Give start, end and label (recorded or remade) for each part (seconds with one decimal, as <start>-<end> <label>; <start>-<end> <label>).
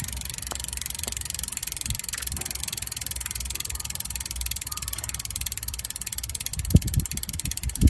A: 0.0-1.6 remade; 1.6-2.6 recorded; 2.6-6.5 remade; 6.5-7.3 recorded; 7.3-7.9 remade